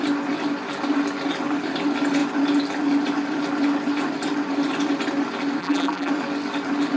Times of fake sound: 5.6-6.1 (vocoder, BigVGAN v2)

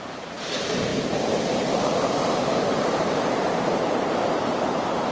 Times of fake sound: 0.0-5.1 (vocoder, BigVGAN v2)

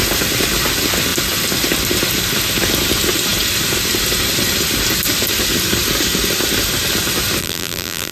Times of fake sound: 7.4-8.1 (vocoder, BigVGAN v2)

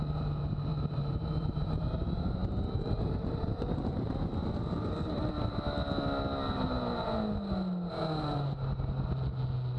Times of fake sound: 0.7-5.3 (vocoder, BigVGAN v2)

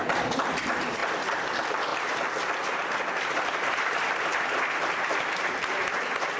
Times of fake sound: 1.0-1.5 (vocoder, BigVGAN v2); 1.9-5.7

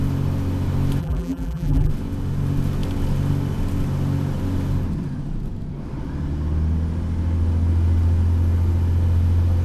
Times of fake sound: 1.0-1.9 (vocoder, BigVGAN v2)

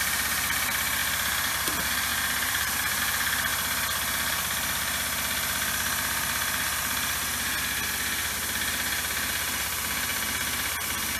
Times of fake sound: 2.1-3.0 (vocoder, BigVGAN v2); 10.1-11.2